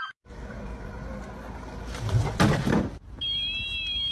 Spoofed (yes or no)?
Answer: no